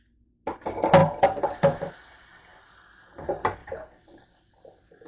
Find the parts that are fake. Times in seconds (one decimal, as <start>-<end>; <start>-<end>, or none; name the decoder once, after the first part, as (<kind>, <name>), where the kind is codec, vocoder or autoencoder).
1.0-2.7 (vocoder, BigVGAN v2); 3.6-4.5